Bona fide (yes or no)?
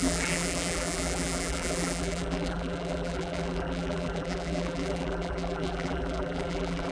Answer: no